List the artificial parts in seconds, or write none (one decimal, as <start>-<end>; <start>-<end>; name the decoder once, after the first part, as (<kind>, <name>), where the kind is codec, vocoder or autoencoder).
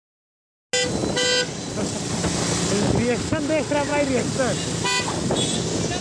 none